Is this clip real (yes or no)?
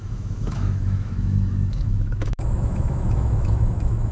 no